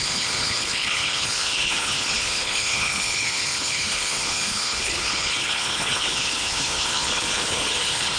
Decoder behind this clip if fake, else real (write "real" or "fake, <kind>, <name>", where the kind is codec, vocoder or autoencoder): fake, codec, HILCodec